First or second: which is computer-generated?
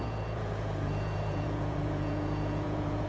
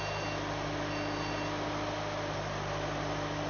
first